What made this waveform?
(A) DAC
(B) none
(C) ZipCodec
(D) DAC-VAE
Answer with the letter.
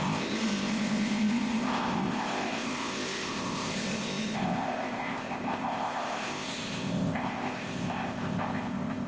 C